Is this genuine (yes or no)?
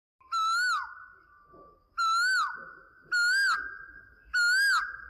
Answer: yes